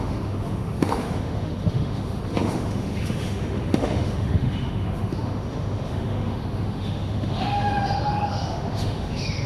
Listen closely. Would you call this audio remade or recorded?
remade